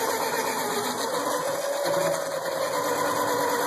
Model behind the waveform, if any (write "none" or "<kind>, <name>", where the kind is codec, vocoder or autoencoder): none